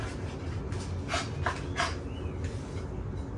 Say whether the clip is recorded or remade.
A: recorded